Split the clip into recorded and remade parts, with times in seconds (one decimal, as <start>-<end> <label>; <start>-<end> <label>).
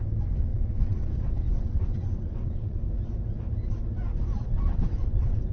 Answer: 0.0-0.5 recorded; 0.5-2.8 remade; 2.8-4.4 recorded; 4.4-5.5 remade